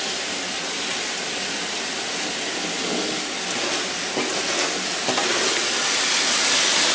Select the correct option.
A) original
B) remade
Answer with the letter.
A